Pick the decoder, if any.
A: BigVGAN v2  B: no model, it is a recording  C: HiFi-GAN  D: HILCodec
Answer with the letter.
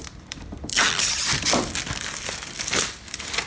A